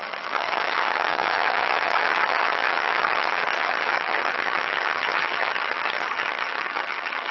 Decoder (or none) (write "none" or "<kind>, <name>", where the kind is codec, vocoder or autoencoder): vocoder, HiFi-GAN